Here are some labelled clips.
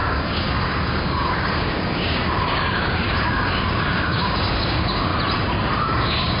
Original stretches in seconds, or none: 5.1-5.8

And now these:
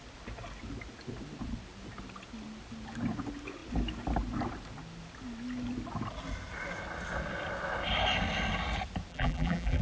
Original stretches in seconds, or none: 0.0-9.1